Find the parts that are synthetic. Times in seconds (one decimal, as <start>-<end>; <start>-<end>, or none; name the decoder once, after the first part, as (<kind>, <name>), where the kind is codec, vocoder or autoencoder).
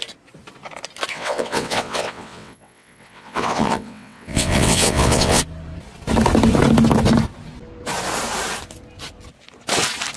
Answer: 1.1-5.4 (vocoder, WaveNeXt)